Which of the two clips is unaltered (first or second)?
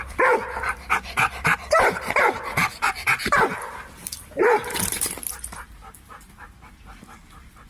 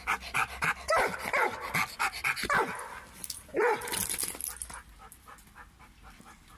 second